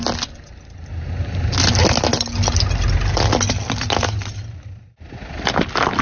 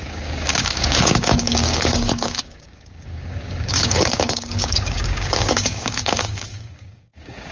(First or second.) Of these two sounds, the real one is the first